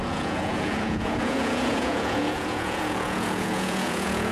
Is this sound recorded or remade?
remade